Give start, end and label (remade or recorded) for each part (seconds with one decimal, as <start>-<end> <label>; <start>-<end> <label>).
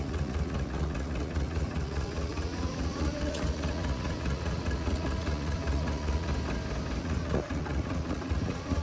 0.0-6.3 remade; 6.3-7.0 recorded; 7.0-8.8 remade